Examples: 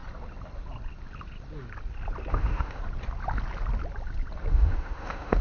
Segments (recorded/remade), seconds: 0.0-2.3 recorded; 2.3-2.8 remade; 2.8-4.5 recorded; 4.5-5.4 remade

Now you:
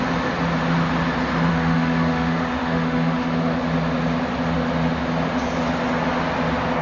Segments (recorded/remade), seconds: 0.0-1.5 recorded; 1.5-3.6 remade; 3.6-6.8 recorded